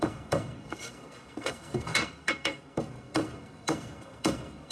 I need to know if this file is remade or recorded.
remade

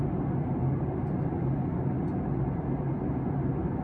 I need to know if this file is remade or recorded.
recorded